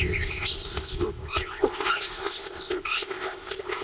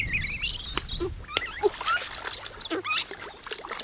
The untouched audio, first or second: second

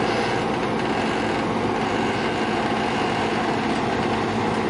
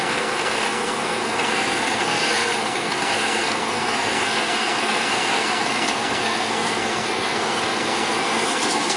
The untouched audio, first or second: first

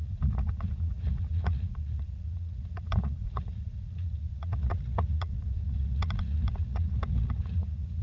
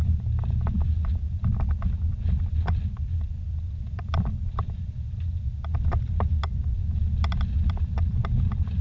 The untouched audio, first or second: second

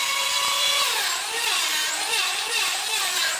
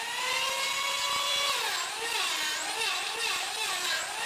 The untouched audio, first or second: second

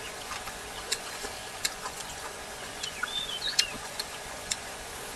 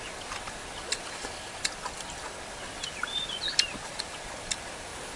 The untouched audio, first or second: second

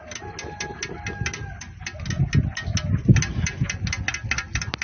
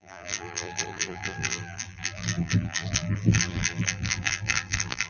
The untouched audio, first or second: first